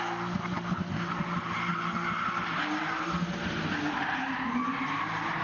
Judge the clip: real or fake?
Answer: real